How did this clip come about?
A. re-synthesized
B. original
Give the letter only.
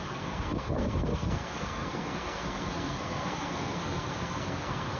A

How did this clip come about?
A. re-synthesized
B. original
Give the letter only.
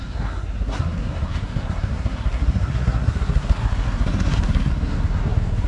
A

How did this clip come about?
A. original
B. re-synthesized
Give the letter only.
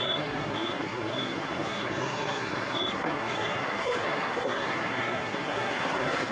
B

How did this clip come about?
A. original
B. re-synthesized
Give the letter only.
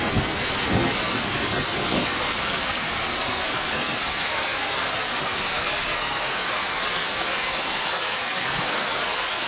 B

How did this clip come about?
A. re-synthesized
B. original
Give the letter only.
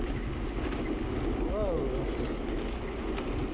B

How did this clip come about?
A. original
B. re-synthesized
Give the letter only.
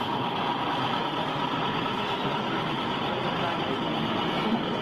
A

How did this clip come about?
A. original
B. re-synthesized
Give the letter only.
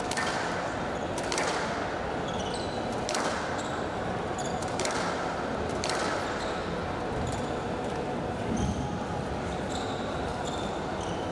A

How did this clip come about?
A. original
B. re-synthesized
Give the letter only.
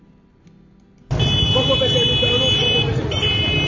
A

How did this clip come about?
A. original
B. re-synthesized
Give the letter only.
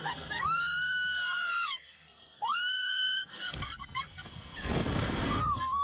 B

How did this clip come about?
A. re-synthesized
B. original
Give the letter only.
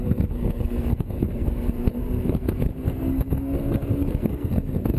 A